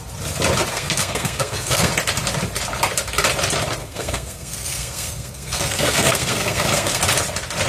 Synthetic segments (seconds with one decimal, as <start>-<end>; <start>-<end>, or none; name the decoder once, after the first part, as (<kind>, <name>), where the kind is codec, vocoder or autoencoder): 0.7-1.9 (codec, SNAC); 3.8-7.0